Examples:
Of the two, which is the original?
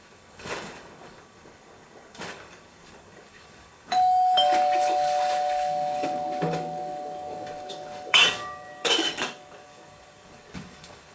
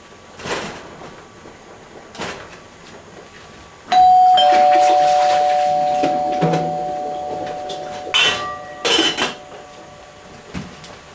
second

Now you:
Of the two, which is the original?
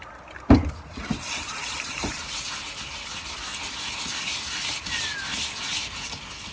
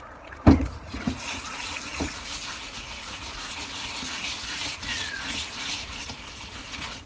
first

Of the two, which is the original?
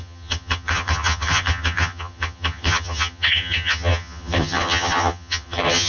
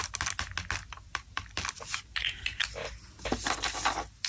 second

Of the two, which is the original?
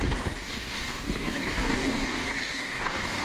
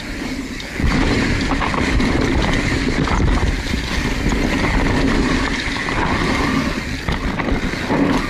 second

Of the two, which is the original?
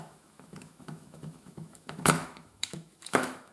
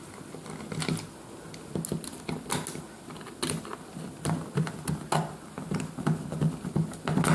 second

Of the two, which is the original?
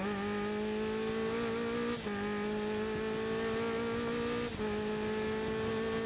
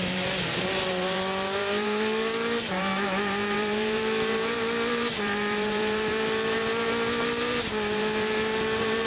first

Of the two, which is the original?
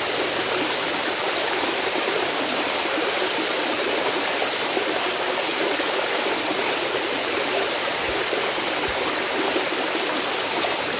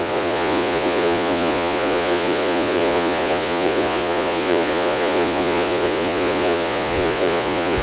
first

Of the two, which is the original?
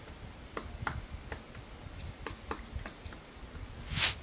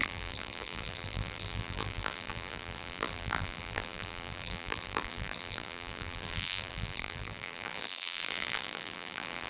first